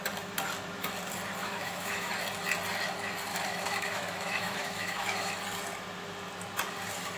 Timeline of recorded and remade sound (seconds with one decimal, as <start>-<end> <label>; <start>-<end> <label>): 0.0-1.4 recorded; 1.4-2.1 remade; 2.1-3.3 recorded; 3.3-5.3 remade; 5.3-7.2 recorded